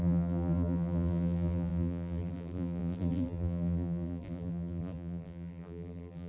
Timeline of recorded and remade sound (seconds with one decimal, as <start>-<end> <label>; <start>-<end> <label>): 0.0-6.3 remade